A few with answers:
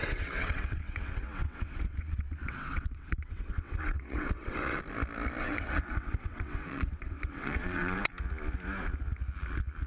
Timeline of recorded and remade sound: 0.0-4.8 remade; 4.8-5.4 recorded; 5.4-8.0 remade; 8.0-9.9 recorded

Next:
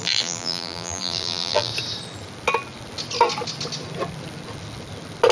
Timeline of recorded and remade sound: 0.0-1.7 remade; 1.7-5.3 recorded

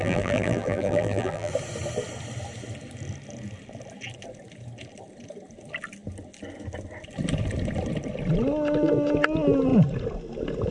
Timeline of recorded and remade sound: 0.0-1.5 remade; 1.5-10.7 recorded

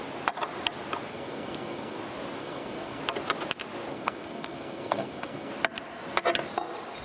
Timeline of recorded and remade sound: 0.0-1.1 recorded; 1.1-2.0 remade; 2.0-2.4 recorded; 2.4-3.0 remade; 3.0-3.9 recorded; 3.9-5.5 remade; 5.5-7.0 recorded

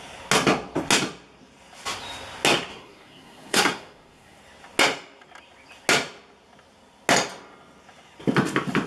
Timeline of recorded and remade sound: 0.0-2.7 recorded; 2.7-4.4 remade; 4.4-8.9 recorded

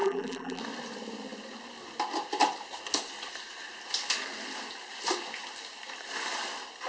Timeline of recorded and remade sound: 0.0-0.6 remade; 0.6-6.9 recorded

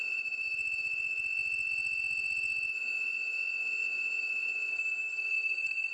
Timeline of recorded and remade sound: 0.0-4.7 recorded; 4.7-5.9 remade